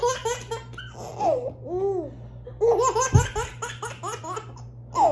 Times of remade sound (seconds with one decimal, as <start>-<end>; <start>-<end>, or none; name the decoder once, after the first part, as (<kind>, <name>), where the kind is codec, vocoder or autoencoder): none